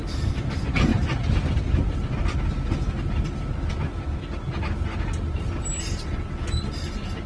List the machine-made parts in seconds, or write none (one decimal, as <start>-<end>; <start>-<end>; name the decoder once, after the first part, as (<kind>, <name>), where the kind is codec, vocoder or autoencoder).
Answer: none